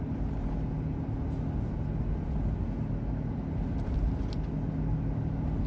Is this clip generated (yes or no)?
no